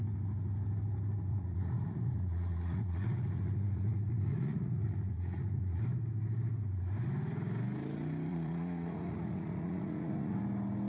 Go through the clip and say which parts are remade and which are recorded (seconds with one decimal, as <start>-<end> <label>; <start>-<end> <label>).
0.0-1.3 recorded; 1.3-5.8 remade; 5.8-8.3 recorded; 8.3-10.4 remade; 10.4-10.9 recorded